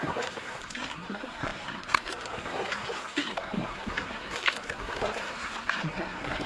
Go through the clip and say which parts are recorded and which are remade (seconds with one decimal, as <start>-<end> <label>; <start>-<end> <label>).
0.0-6.5 remade